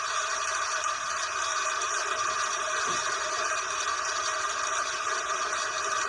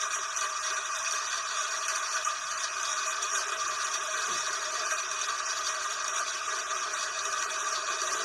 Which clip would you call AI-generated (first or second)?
second